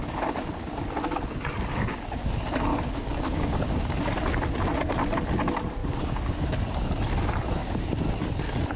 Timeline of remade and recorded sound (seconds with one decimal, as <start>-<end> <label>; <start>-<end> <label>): 0.0-1.7 recorded; 1.7-2.3 remade; 2.3-2.7 recorded; 2.7-3.8 remade; 3.8-5.8 recorded; 5.8-6.5 remade; 6.5-7.6 recorded; 7.6-8.1 remade; 8.1-8.8 recorded